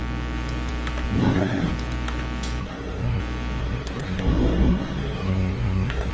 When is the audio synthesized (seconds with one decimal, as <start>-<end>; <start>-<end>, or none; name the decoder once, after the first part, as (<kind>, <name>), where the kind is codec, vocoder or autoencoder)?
1.2-1.7 (codec, SNAC); 2.6-3.2; 3.6-6.1